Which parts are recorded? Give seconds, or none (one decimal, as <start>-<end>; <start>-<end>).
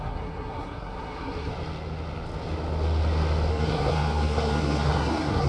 1.5-3.5